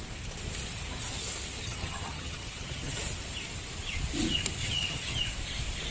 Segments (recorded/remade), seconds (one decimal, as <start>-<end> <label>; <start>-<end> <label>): 0.0-1.6 recorded; 1.6-3.0 remade; 3.0-4.6 recorded; 4.6-5.2 remade; 5.2-5.9 recorded